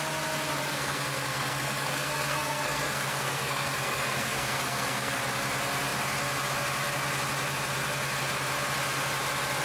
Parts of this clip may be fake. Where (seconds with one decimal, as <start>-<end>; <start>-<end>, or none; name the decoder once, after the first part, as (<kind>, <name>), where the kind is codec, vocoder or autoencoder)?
0.6-5.2 (codec, SNAC)